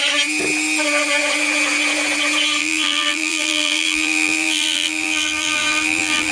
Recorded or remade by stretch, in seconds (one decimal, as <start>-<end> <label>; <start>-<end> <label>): 0.0-2.6 recorded; 2.6-6.3 remade